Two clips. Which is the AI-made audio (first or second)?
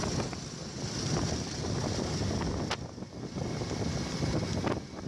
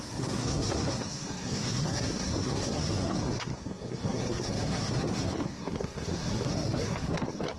second